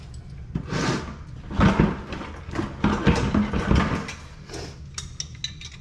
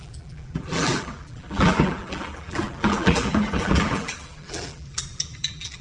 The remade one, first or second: second